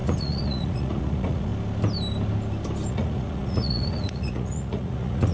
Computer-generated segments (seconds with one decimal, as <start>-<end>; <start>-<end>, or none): 0.0-1.5; 2.9-5.3

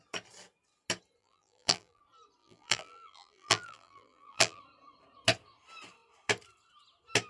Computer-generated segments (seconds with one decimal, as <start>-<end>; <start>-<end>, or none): 1.2-2.0; 2.4-4.6

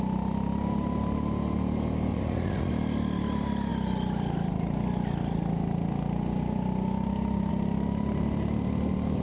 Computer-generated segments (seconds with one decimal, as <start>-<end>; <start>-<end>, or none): 2.1-2.7

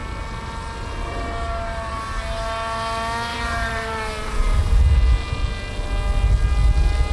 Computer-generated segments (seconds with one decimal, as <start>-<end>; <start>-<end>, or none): 3.3-4.6

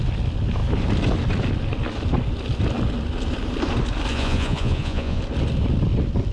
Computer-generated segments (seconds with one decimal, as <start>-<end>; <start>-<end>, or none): 4.1-5.2

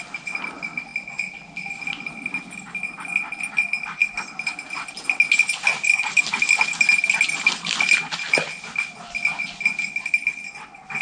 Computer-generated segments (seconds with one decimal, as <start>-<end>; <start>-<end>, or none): none

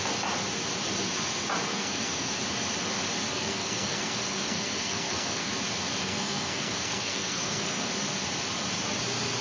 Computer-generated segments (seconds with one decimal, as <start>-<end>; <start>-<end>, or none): 1.7-2.4; 3.3-5.5; 6.0-7.9

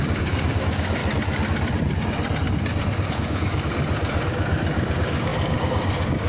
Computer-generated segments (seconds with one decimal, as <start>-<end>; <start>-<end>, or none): 0.0-1.0; 3.1-3.7; 4.3-6.3